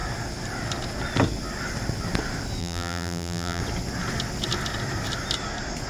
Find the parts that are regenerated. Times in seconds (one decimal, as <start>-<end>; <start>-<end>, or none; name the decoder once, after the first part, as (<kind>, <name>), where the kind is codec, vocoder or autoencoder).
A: 2.6-3.6 (vocoder, BigVGAN v2)